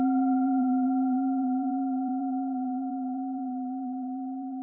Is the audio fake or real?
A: fake